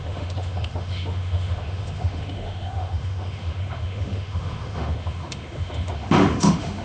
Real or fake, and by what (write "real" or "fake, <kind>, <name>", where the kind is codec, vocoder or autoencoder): fake, autoencoder, DAC-VAE